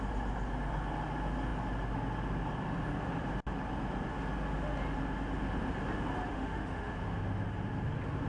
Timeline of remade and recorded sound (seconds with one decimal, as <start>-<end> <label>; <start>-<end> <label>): 0.0-6.3 recorded; 6.3-6.9 remade; 6.9-8.3 recorded